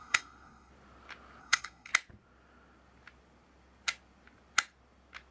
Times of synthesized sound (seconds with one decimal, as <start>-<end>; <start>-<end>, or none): 0.0-0.7; 1.4-1.9